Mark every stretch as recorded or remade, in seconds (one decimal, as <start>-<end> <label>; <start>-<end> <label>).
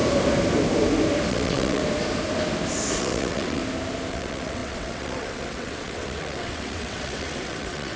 0.0-1.3 recorded; 1.3-1.8 remade; 1.8-3.0 recorded; 3.0-3.6 remade; 3.6-4.1 recorded; 4.1-8.0 remade